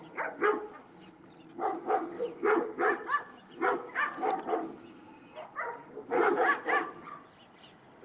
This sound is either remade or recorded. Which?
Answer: recorded